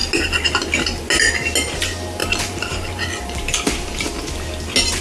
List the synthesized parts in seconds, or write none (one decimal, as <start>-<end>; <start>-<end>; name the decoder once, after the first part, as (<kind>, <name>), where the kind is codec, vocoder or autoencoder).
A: 2.2-4.1 (vocoder, BigVGAN v2)